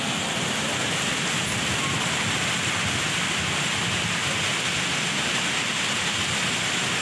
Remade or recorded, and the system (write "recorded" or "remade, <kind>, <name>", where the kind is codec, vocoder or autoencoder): recorded